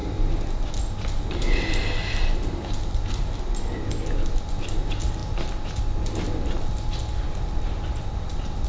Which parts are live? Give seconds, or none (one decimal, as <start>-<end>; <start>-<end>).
0.0-1.7